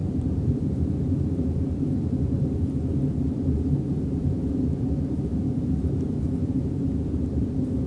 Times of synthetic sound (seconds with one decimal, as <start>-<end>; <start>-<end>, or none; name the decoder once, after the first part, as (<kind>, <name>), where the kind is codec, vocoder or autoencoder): 0.0-7.9 (vocoder, BigVGAN v2)